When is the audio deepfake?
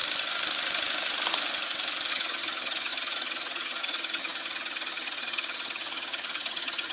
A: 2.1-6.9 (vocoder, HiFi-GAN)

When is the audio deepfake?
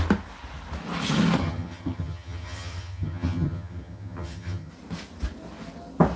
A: 1.4-4.7 (vocoder, HiFi-GAN)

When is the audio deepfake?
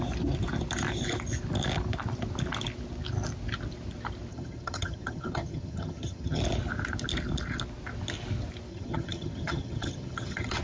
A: 4.3-6.4 (vocoder, HiFi-GAN); 8.7-10.6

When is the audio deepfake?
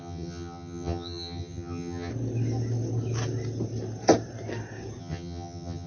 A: 0.0-2.1 (vocoder, HiFi-GAN); 5.0-5.9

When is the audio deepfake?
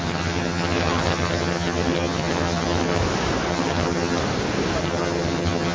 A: 0.0-3.0 (vocoder, HiFi-GAN); 3.5-4.2; 4.8-5.7